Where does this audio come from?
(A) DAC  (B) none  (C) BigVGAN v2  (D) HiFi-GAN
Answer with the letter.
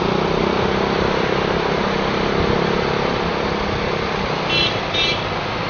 B